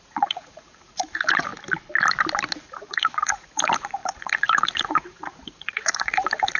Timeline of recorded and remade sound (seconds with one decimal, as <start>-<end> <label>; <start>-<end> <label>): 0.0-1.5 remade; 1.5-2.6 recorded; 2.6-6.6 remade